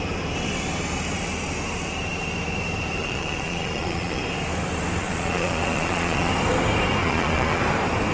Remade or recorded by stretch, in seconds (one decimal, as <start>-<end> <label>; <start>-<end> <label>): 0.0-3.0 recorded; 3.0-4.2 remade; 4.2-5.0 recorded; 5.0-6.3 remade; 6.3-7.0 recorded; 7.0-7.6 remade; 7.6-8.1 recorded